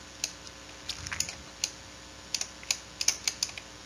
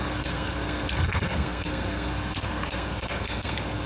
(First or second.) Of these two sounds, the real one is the first